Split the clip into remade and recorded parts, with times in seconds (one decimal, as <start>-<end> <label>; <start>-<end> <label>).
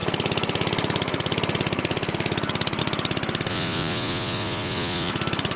0.0-3.5 recorded; 3.5-5.1 remade; 5.1-5.6 recorded